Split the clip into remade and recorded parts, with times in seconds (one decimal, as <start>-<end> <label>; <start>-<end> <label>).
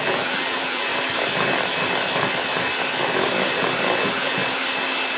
0.0-0.9 remade; 0.9-4.0 recorded; 4.0-4.4 remade; 4.4-5.2 recorded